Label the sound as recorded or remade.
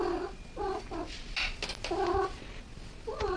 recorded